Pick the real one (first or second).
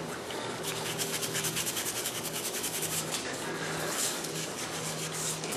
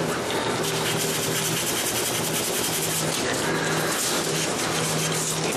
second